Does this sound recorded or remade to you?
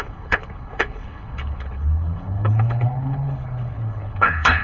remade